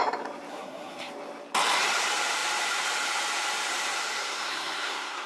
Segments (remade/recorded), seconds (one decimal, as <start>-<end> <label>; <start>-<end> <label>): 0.0-0.5 recorded; 0.5-1.1 remade; 1.1-4.2 recorded; 4.2-5.3 remade